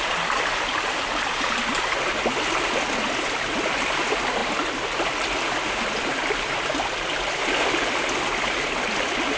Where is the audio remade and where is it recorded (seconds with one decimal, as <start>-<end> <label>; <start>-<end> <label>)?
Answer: 0.0-9.4 recorded